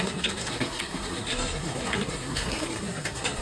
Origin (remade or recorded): remade